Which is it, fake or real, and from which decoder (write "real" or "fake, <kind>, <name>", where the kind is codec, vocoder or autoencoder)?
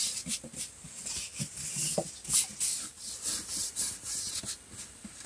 real